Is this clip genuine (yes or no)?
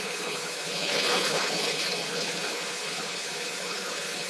no